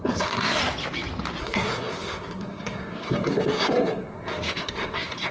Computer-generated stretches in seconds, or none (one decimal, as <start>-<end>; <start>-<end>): 0.0-0.6; 1.4-5.3